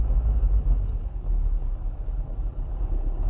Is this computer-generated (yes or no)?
no